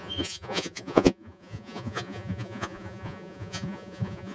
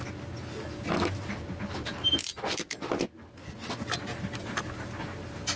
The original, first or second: second